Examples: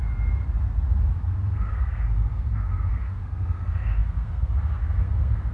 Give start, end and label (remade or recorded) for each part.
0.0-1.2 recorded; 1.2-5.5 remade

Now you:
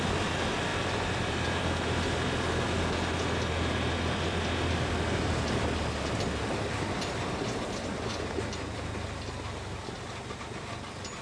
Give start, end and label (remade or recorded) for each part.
0.0-0.7 recorded; 0.7-1.6 remade; 1.6-11.2 recorded

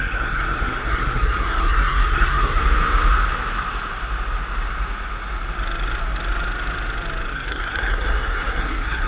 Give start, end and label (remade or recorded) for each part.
0.0-2.6 remade; 2.6-7.3 recorded; 7.3-9.1 remade

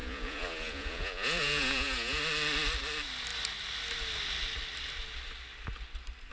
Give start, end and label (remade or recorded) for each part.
0.0-2.2 remade; 2.2-6.3 recorded

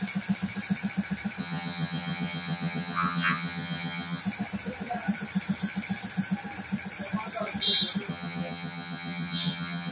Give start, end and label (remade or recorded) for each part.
0.0-1.4 recorded; 1.4-4.2 remade; 4.2-8.1 recorded; 8.1-9.9 remade